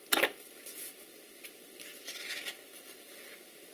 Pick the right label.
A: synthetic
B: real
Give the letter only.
B